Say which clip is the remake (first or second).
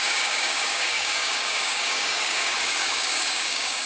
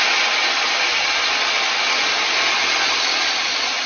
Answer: first